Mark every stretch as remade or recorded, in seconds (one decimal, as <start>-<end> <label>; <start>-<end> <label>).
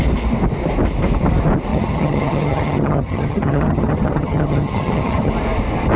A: 0.0-1.7 recorded; 1.7-5.3 remade; 5.3-6.0 recorded